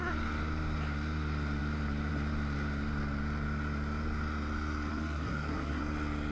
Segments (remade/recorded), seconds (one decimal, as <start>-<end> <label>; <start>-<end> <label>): 0.0-4.9 recorded; 4.9-5.8 remade; 5.8-6.3 recorded